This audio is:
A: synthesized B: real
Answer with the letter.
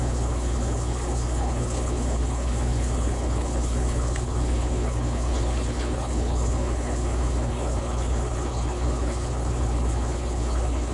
A